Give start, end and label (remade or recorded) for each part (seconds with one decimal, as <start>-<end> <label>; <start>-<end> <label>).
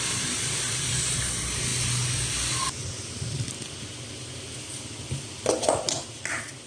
0.0-1.7 remade; 1.7-5.7 recorded; 5.7-6.7 remade